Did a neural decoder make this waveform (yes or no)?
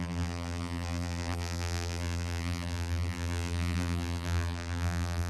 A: yes